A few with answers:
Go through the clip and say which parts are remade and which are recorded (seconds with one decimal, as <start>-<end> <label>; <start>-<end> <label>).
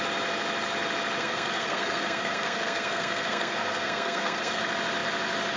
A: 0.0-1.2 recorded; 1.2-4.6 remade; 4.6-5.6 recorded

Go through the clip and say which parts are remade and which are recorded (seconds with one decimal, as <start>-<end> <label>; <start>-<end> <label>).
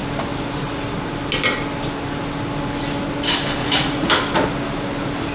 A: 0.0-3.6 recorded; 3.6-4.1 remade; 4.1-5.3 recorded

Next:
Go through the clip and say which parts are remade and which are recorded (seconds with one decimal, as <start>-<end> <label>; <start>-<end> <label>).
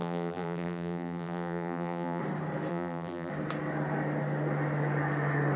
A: 0.0-2.2 remade; 2.2-2.7 recorded; 2.7-3.3 remade; 3.3-5.6 recorded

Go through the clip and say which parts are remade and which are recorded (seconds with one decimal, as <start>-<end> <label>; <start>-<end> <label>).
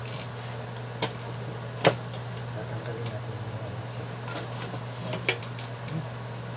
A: 0.0-6.6 recorded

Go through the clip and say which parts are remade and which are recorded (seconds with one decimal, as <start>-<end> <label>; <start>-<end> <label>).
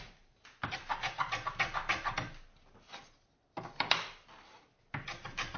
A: 0.0-5.6 recorded